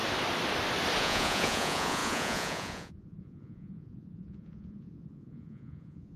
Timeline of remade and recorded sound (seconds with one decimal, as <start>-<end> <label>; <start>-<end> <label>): 0.0-1.0 recorded; 1.0-6.2 remade